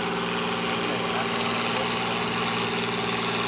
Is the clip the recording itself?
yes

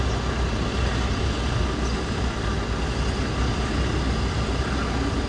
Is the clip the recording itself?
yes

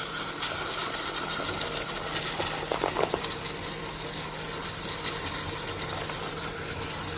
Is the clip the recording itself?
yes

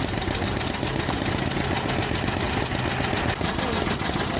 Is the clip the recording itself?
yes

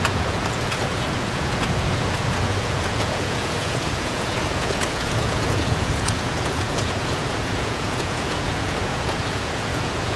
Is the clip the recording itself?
no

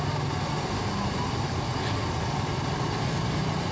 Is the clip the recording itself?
yes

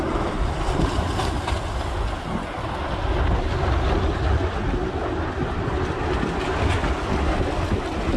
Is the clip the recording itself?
yes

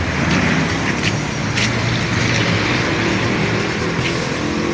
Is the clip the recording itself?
yes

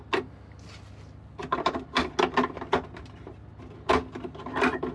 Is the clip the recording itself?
yes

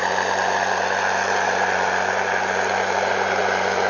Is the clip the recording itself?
yes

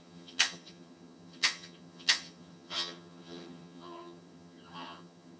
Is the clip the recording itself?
no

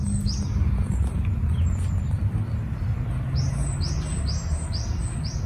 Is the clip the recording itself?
yes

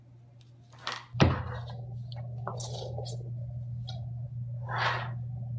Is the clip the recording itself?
yes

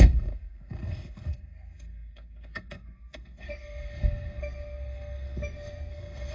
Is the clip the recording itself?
no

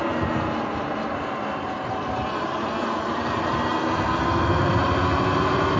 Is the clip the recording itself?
yes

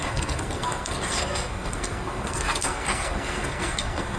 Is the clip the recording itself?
no